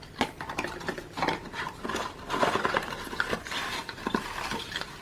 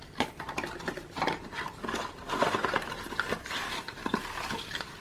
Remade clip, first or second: second